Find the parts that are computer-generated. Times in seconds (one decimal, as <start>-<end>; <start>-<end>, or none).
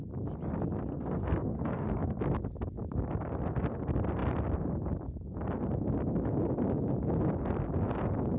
0.9-2.2